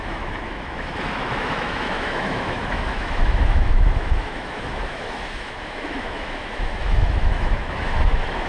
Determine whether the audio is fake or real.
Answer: fake